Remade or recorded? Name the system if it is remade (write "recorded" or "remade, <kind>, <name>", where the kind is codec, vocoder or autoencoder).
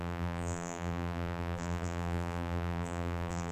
remade, vocoder, BigVGAN v2